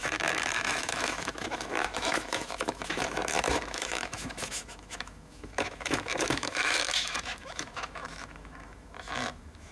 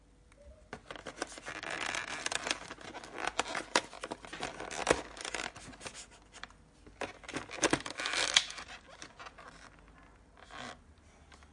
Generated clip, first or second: first